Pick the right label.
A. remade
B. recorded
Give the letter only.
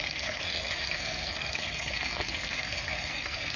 A